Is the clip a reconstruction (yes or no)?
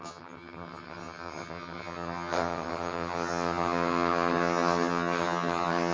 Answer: yes